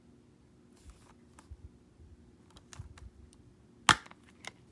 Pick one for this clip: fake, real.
real